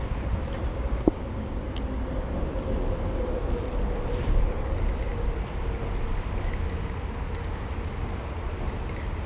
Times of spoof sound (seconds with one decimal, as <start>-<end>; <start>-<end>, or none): 0.7-1.6